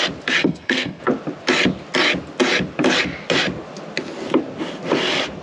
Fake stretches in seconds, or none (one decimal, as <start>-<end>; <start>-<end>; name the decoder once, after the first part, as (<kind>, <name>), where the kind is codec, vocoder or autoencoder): 0.4-1.0 (codec, SNAC)

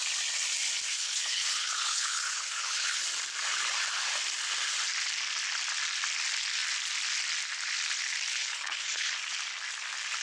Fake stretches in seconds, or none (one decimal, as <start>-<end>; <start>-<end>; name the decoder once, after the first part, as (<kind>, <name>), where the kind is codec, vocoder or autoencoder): 0.9-3.0 (codec, HILCodec); 8.3-9.1

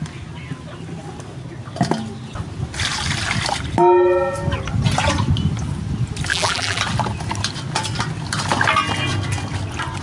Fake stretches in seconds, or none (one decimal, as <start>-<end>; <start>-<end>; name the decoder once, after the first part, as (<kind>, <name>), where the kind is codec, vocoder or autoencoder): 6.3-6.8 (vocoder, BigVGAN v2)

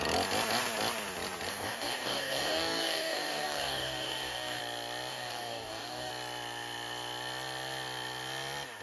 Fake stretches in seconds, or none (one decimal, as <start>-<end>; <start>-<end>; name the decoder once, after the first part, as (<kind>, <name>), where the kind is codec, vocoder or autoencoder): 1.5-4.6 (codec, DAC); 5.1-6.1